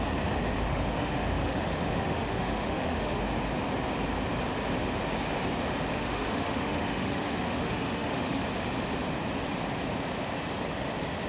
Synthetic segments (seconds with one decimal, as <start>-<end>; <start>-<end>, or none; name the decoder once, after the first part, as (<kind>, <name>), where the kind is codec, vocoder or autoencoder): 0.7-3.2 (autoencoder, DAC-VAE); 5.9-8.4